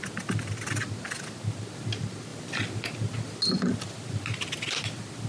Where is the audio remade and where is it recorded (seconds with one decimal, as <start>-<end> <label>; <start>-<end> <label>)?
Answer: 0.0-5.3 recorded